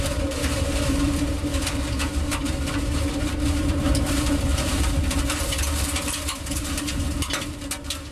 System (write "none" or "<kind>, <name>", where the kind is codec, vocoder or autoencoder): vocoder, BigVGAN v2